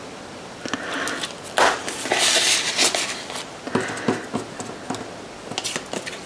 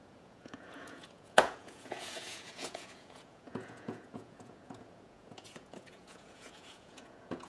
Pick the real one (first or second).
first